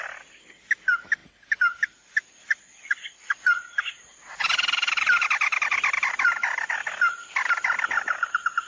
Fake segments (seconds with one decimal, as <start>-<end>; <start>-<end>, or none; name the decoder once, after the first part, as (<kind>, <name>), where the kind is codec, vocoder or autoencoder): none